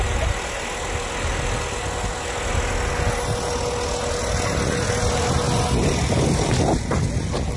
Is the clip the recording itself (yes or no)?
yes